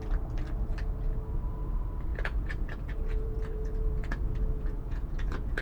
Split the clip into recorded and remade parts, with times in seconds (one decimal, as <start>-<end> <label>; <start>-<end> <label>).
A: 0.0-2.1 recorded; 2.1-5.6 remade